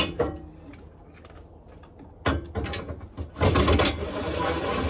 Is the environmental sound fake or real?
real